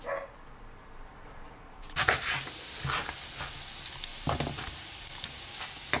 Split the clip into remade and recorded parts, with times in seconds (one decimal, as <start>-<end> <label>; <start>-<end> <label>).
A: 0.0-1.1 recorded; 1.1-2.2 remade; 2.2-4.1 recorded; 4.1-5.2 remade; 5.2-6.0 recorded